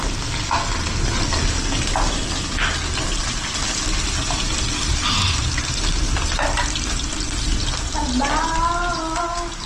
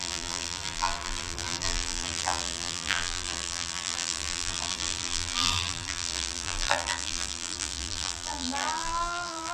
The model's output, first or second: second